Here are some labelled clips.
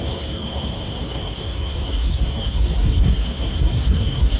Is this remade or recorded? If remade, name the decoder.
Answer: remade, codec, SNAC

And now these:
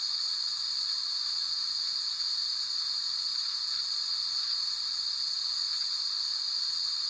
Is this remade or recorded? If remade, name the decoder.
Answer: recorded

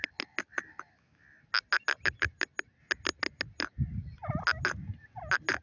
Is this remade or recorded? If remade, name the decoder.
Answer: recorded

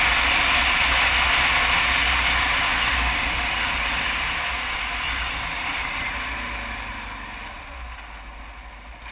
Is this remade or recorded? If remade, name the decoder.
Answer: recorded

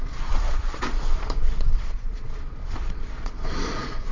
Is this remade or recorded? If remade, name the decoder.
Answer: remade, vocoder, Vocos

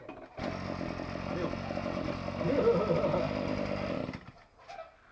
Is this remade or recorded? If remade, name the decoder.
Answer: recorded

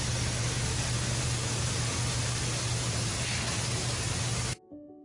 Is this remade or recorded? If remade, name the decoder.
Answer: recorded